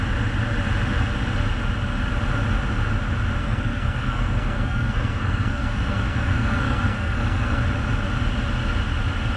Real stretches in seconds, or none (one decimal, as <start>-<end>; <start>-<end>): 0.0-3.4; 7.6-9.4